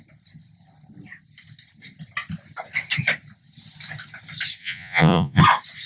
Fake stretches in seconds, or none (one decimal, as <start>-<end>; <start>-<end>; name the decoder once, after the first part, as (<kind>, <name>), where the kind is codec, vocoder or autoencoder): 4.6-5.4 (vocoder, Vocos)